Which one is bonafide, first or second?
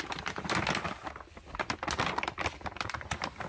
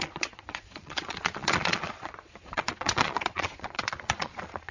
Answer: first